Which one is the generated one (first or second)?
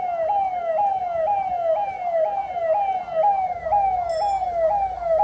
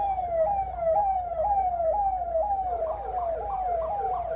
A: second